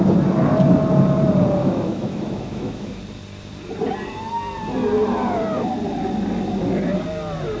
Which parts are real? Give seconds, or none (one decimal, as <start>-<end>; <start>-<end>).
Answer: 0.0-1.6; 3.0-7.6